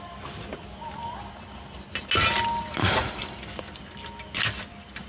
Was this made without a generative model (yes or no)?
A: yes